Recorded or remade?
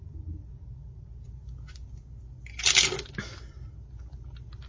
recorded